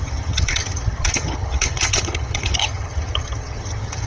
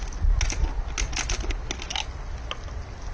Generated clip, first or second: first